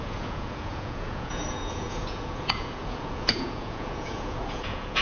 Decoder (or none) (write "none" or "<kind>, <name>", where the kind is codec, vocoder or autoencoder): vocoder, Vocos